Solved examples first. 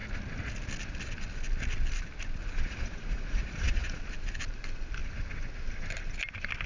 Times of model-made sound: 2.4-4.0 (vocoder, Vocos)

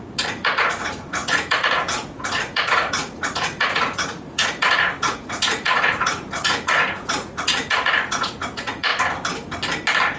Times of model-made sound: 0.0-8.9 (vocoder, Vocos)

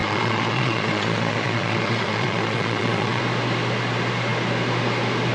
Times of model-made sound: 0.0-3.2 (vocoder, Vocos)